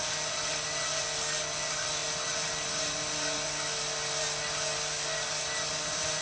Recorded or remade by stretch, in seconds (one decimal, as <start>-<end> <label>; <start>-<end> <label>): 0.0-6.2 recorded